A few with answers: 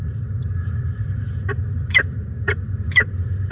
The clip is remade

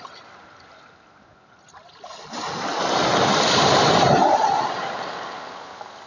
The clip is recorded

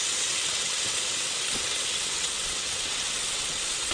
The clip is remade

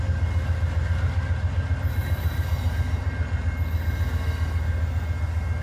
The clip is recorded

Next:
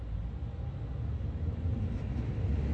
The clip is recorded